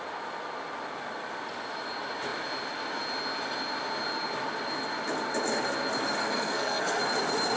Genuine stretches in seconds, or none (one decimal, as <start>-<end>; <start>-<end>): 0.0-6.2; 7.0-7.6